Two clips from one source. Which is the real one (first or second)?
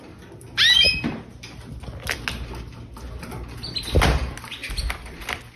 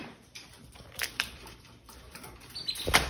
first